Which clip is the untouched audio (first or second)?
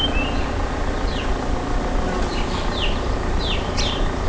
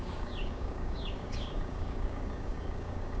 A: first